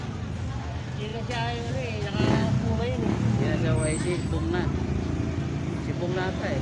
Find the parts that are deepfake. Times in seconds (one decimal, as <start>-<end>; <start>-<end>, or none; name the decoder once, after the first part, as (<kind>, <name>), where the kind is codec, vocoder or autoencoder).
none